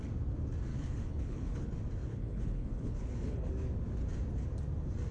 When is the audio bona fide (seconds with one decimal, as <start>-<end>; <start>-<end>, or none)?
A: 0.0-0.7; 1.7-2.1; 3.5-5.1